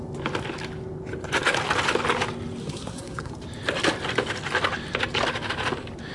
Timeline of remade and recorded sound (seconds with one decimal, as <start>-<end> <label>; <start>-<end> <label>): 0.0-2.6 recorded; 2.6-3.3 remade; 3.3-6.1 recorded